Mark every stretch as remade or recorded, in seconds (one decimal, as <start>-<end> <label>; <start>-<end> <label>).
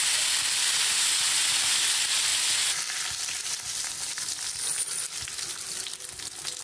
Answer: 0.0-6.6 recorded